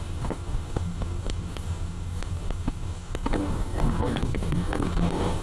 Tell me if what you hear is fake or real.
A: fake